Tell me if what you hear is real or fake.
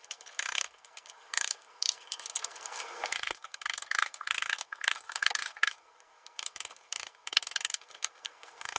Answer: fake